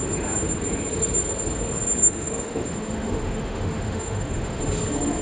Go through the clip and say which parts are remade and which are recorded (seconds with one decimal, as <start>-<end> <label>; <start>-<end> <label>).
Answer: 0.0-2.0 recorded; 2.0-4.6 remade; 4.6-5.2 recorded